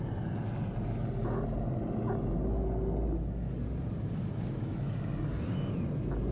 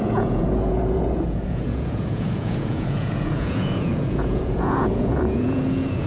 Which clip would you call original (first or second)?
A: first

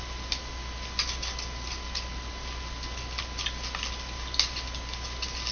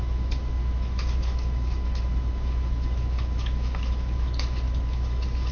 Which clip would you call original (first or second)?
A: first